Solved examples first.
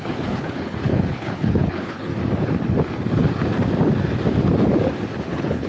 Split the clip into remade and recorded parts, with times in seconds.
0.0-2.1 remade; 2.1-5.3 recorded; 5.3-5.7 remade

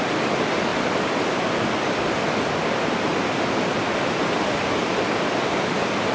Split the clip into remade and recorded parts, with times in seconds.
0.0-6.1 recorded

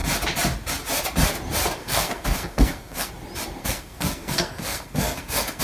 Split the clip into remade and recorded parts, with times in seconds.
0.0-1.8 recorded; 1.8-3.1 remade; 3.1-3.6 recorded; 3.6-5.6 remade

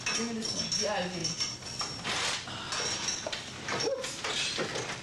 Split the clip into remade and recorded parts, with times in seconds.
0.0-5.0 recorded

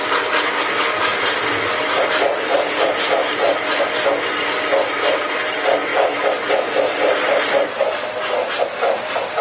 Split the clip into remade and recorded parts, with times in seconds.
0.0-9.4 recorded